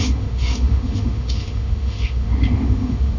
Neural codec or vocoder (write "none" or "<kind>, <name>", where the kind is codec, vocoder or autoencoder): autoencoder, DAC-VAE